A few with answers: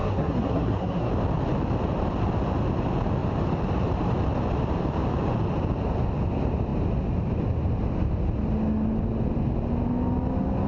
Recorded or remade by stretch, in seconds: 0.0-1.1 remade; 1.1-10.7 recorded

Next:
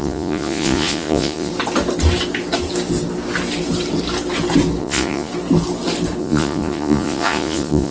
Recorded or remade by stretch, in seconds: 0.0-1.5 remade; 1.5-4.8 recorded; 4.8-5.3 remade; 5.3-6.2 recorded; 6.2-7.9 remade

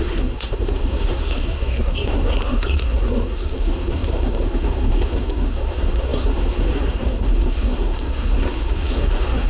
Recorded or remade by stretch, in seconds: 0.0-9.5 remade

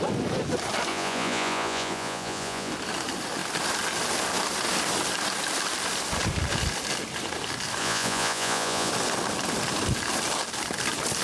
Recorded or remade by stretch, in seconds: 0.0-0.9 recorded; 0.9-2.7 remade; 2.7-7.8 recorded; 7.8-8.9 remade; 8.9-11.2 recorded

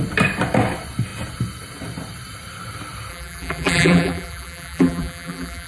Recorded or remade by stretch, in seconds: 0.0-3.1 recorded; 3.1-5.7 remade

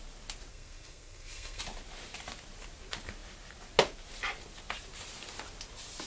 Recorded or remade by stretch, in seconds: 0.0-0.5 recorded; 0.5-1.6 remade; 1.6-6.1 recorded

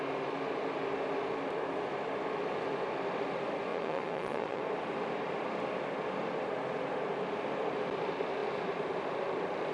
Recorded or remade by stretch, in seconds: 0.0-3.7 recorded; 3.7-4.6 remade; 4.6-9.7 recorded